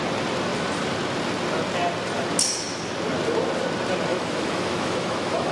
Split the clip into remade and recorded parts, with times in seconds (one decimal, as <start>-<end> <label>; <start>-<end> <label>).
0.0-4.1 recorded; 4.1-5.5 remade